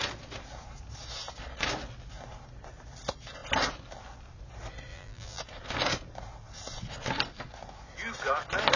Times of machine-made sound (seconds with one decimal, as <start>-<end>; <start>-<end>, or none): 4.9-5.4

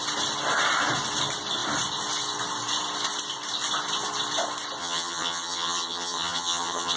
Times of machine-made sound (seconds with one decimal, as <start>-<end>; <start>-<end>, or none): 4.8-7.0

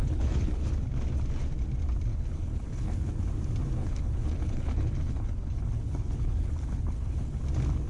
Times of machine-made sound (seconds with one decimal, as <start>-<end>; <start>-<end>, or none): 0.0-0.7; 2.1-3.2; 3.8-7.4

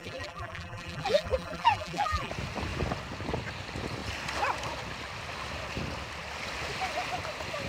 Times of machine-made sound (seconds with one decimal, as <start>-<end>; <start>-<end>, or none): 0.0-2.3

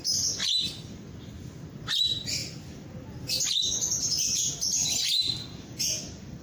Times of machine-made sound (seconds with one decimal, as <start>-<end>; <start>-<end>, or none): 0.0-0.4; 1.2-6.4

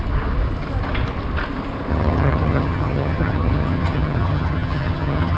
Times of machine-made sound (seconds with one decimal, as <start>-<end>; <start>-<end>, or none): 1.9-5.4

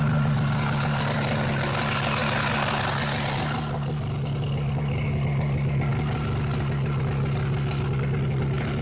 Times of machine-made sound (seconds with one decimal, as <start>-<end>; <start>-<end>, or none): none

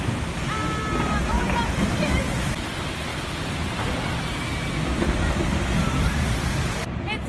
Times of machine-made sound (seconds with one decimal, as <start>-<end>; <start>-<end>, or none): none